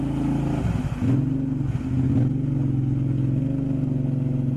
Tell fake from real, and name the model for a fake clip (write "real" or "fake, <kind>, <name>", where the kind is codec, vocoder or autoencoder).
real